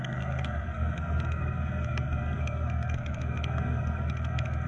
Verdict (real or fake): fake